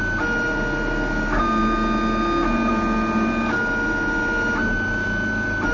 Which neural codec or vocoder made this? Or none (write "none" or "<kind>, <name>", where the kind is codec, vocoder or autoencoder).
none